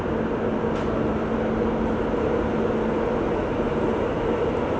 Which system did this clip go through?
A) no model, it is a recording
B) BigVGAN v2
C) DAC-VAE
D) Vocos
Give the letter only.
A